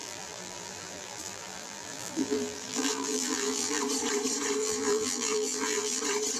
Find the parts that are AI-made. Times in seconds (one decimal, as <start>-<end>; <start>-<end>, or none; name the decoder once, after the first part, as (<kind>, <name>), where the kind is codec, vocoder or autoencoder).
0.0-3.8 (vocoder, BigVGAN v2); 4.6-6.0

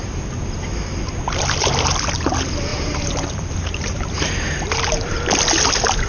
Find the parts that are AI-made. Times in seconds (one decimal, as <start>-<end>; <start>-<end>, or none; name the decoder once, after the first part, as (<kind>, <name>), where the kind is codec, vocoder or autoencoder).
2.7-5.2 (vocoder, BigVGAN v2)

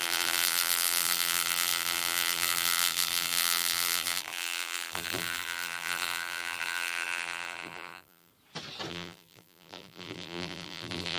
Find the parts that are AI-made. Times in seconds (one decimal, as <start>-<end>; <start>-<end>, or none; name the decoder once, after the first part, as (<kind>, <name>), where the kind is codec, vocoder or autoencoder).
0.0-8.3 (vocoder, BigVGAN v2); 8.9-11.2

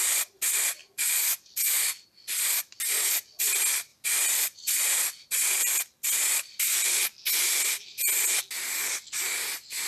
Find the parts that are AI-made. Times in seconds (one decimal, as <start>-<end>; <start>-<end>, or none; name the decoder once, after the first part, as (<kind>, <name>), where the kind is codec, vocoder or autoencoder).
3.9-6.9 (vocoder, BigVGAN v2)